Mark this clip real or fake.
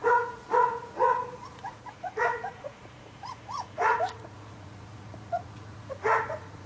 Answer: fake